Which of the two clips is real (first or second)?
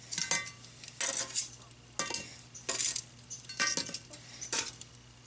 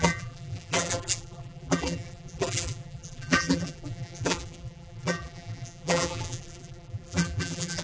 first